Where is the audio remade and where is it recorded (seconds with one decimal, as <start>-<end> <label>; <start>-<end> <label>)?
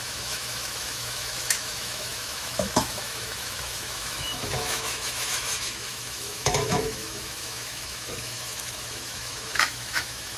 0.0-10.4 remade